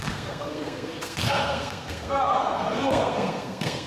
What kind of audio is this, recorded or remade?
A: remade